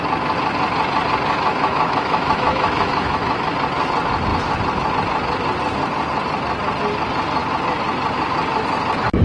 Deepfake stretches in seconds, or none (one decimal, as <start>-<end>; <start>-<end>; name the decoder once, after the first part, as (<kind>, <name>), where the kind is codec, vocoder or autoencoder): 1.5-3.5 (autoencoder, DAC-VAE)